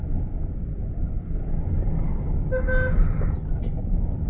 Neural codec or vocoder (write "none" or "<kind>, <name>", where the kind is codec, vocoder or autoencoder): none